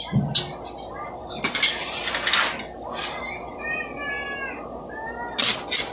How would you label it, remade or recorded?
recorded